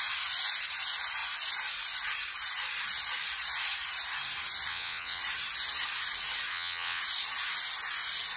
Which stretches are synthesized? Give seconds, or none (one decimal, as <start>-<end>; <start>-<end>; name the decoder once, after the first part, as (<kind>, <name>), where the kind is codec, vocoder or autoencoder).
4.7-5.2 (vocoder, WaveNeXt); 6.5-7.0